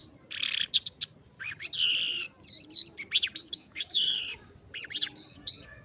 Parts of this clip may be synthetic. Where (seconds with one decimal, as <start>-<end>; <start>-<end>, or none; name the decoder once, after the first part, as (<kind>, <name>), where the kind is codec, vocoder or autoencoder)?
3.5-4.2 (autoencoder, DAC-VAE)